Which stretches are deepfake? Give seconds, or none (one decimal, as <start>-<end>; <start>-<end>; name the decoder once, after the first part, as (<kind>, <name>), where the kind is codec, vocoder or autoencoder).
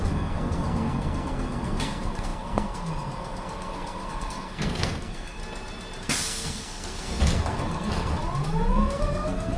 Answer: 0.0-5.4 (codec, SNAC); 6.0-8.2; 8.7-9.6